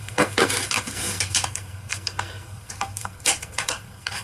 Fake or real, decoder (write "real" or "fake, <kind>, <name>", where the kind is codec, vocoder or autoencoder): fake, codec, SNAC